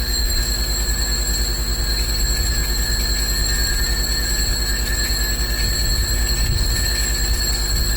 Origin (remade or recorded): recorded